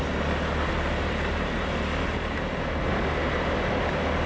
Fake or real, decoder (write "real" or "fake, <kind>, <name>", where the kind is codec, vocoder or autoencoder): real